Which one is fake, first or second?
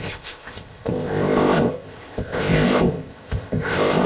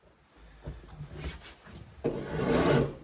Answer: first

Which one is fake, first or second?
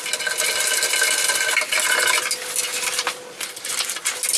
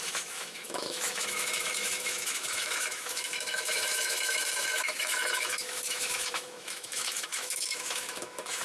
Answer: second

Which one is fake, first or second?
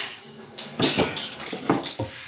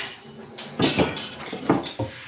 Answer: first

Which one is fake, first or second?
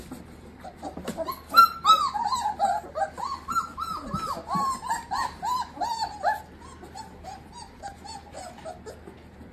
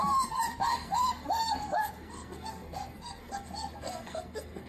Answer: second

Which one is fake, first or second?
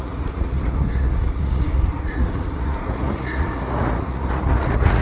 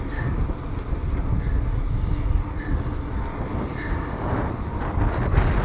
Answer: first